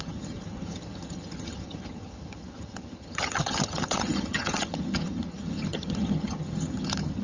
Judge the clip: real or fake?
fake